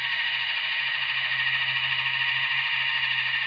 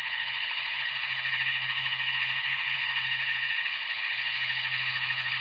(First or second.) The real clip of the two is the first